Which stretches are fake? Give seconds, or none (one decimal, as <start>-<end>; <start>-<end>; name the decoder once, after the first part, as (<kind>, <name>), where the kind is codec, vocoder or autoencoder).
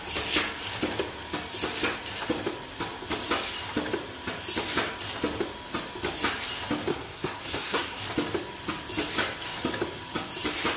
6.9-8.0 (codec, SNAC)